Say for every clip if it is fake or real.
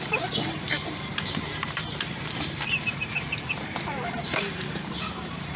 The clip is fake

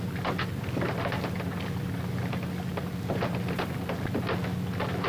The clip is real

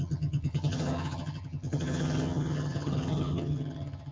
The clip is fake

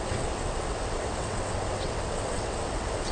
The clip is fake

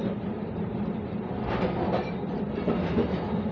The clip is real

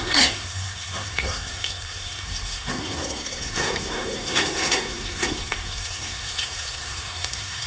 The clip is fake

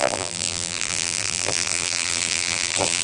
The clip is fake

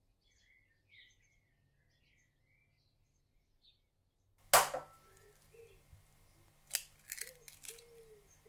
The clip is real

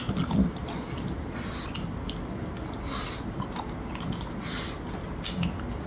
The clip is real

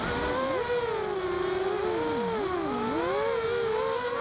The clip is real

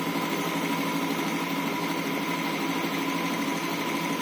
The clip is real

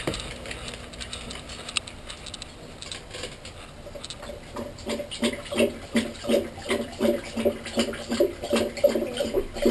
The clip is real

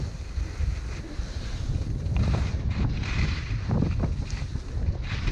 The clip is real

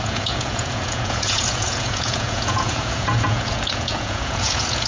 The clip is fake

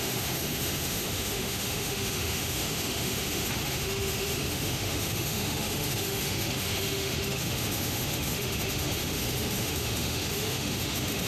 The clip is fake